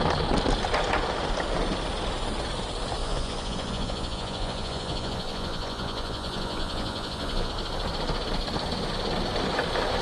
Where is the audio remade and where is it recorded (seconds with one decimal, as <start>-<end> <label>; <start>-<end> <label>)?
0.0-3.0 recorded; 3.0-7.5 remade; 7.5-10.0 recorded

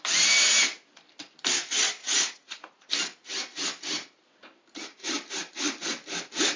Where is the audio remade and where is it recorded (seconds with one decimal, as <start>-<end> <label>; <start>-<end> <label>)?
0.0-2.0 recorded; 2.0-2.9 remade; 2.9-6.6 recorded

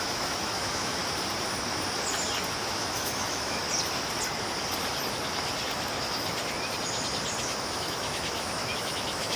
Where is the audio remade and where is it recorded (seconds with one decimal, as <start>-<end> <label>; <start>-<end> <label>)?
0.0-1.0 remade; 1.0-2.6 recorded; 2.6-3.6 remade; 3.6-7.4 recorded; 7.4-9.4 remade

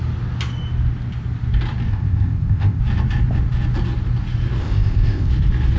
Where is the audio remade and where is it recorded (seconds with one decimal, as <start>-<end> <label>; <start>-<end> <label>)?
0.0-1.9 recorded; 1.9-2.8 remade; 2.8-4.6 recorded; 4.6-5.3 remade; 5.3-5.8 recorded

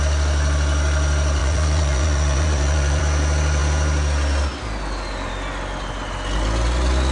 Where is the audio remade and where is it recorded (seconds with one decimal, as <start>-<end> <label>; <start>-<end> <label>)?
0.0-1.4 recorded; 1.4-3.0 remade; 3.0-7.1 recorded

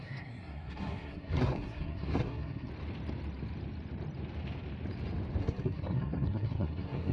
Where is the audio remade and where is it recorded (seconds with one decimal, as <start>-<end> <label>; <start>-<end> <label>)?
0.0-2.7 remade; 2.7-5.4 recorded; 5.4-7.1 remade